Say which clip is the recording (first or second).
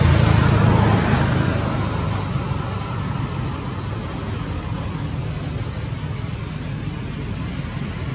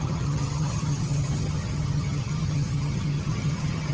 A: first